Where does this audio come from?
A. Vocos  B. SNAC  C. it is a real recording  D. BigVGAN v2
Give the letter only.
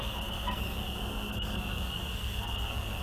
B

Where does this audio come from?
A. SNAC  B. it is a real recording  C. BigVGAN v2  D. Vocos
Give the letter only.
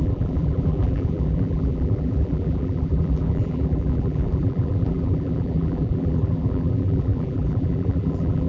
C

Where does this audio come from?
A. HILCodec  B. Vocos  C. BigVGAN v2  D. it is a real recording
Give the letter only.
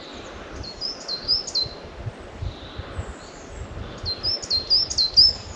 D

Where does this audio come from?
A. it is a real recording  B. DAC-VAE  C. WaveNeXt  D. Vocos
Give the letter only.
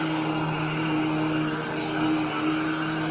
A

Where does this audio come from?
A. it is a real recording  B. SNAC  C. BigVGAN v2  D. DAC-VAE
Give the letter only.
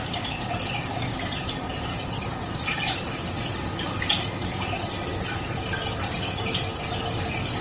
A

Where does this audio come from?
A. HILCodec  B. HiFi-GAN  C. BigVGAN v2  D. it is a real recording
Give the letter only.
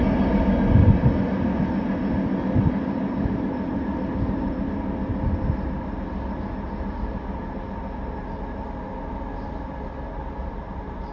D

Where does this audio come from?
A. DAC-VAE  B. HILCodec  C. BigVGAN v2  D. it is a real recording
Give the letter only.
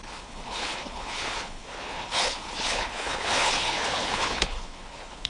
B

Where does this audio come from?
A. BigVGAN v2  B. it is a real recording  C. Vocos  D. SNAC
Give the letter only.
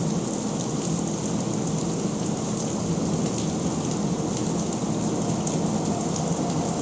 B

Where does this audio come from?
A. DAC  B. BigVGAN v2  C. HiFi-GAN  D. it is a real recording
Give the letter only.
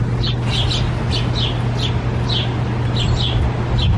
D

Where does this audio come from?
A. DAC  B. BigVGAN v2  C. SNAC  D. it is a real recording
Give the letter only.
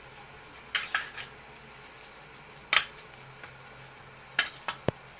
D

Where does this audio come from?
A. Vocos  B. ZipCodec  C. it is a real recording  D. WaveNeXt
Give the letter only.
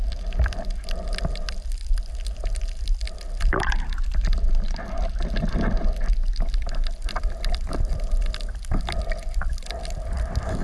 C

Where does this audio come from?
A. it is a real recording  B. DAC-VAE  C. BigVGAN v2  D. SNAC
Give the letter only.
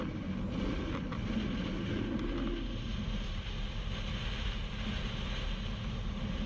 A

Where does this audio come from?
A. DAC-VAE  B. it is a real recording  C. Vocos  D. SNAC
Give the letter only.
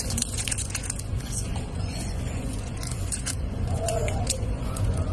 C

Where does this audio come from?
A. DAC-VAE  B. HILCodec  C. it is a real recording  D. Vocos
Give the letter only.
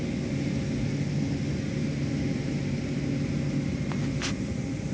C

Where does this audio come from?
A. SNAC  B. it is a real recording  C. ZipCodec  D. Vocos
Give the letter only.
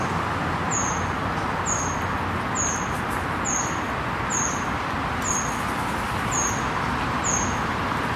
B